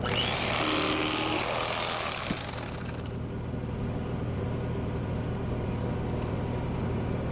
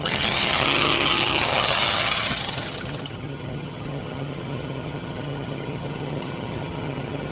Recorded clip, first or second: first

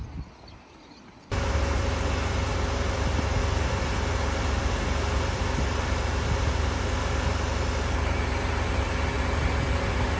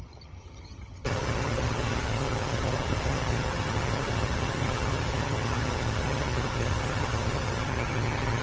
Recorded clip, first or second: first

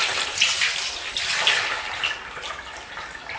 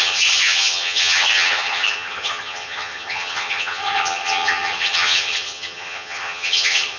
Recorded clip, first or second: first